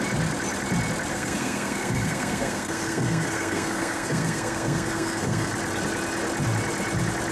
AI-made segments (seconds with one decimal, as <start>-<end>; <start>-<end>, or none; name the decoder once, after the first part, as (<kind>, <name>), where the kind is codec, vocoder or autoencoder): 1.1-5.5 (codec, SNAC)